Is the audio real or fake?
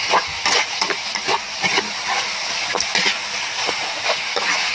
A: real